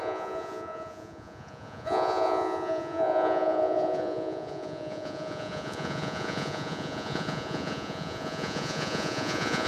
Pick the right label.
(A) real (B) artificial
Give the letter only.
B